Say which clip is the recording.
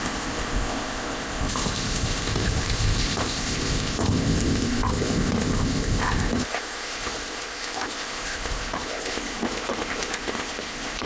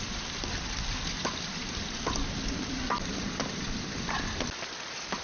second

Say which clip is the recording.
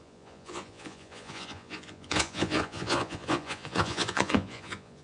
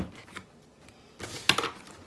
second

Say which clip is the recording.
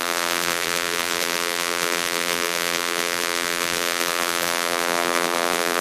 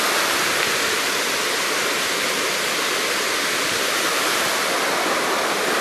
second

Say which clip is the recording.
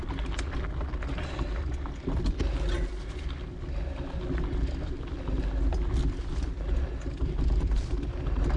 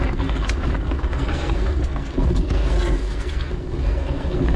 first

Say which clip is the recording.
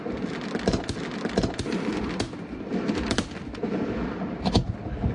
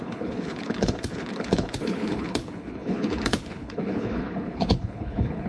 first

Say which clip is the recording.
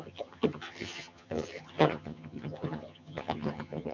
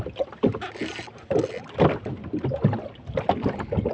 second